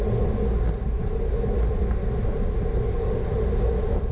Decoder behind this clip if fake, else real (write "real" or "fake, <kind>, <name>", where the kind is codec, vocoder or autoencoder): real